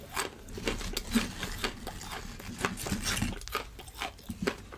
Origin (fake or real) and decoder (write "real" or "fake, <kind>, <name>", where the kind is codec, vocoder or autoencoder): real